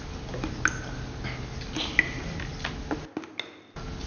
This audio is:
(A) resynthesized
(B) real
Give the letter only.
B